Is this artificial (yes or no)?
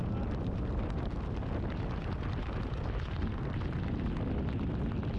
no